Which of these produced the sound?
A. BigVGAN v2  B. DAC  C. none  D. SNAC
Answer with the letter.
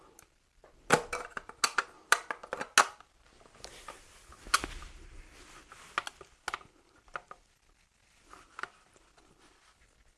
C